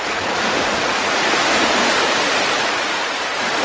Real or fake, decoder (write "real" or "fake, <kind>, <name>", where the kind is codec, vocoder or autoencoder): fake, vocoder, Vocos